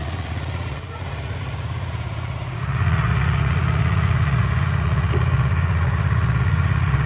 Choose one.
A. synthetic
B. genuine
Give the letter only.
A